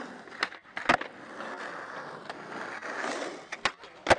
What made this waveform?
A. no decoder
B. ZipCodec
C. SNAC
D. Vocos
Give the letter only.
A